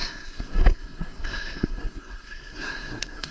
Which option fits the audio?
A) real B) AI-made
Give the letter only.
B